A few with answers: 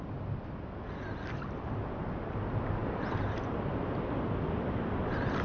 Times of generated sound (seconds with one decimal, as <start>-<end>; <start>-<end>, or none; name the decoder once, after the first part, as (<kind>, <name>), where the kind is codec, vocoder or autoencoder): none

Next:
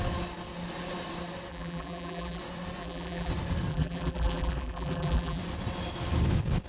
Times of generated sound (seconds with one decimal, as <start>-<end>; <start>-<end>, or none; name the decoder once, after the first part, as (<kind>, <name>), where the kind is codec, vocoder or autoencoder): 1.5-2.4 (vocoder, BigVGAN v2); 2.8-3.3; 3.7-5.4

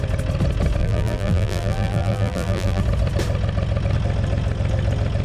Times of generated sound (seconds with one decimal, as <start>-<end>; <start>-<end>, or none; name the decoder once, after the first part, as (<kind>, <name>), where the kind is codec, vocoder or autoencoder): 0.8-2.8 (vocoder, BigVGAN v2)